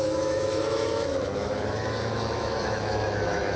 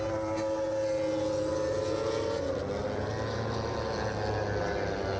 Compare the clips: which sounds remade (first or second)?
first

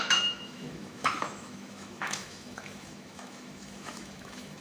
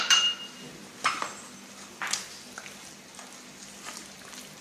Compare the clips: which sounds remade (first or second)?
first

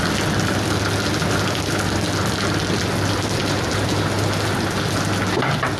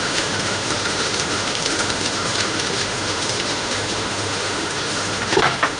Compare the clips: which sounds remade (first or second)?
second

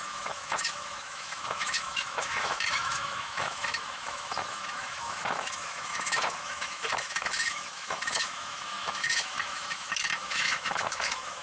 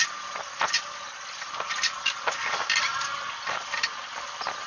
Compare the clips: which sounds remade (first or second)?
first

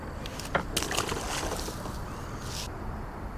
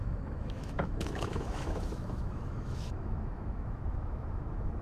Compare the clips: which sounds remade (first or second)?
second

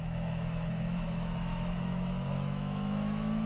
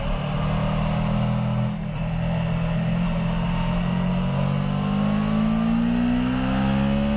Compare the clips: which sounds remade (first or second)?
first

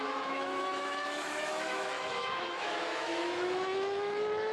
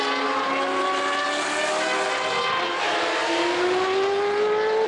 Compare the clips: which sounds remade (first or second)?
first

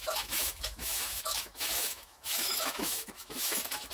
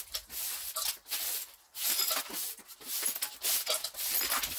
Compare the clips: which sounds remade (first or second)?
first